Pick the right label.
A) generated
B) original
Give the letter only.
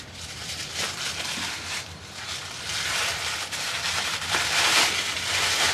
A